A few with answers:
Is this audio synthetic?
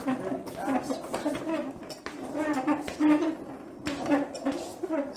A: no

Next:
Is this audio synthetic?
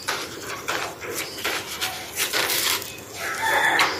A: no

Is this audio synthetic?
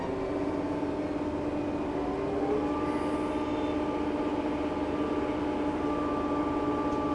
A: no